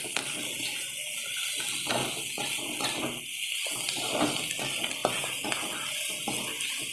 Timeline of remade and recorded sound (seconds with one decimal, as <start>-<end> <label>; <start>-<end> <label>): 0.0-6.9 recorded